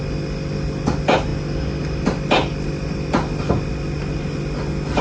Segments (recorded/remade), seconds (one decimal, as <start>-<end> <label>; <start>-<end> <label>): 0.0-5.0 recorded